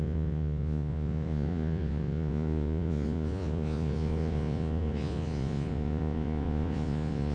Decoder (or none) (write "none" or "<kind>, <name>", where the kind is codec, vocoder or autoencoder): vocoder, Vocos